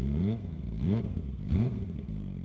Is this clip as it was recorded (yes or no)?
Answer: no